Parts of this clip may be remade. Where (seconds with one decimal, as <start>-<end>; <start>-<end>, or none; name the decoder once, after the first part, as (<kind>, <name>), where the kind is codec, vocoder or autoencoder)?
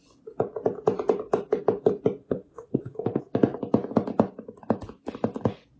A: 2.2-3.2 (autoencoder, DAC-VAE)